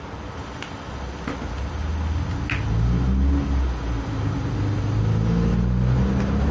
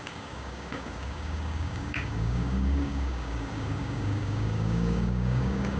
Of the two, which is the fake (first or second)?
second